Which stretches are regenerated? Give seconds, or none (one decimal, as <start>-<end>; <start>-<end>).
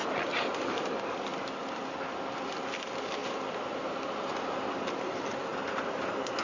none